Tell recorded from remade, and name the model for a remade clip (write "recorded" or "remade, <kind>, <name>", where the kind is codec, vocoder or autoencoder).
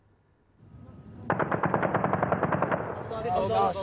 recorded